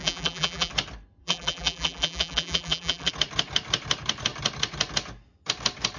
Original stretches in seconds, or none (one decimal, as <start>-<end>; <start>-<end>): 0.7-1.2; 3.1-6.0